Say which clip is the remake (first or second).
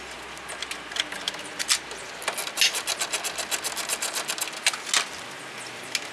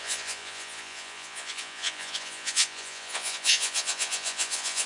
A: second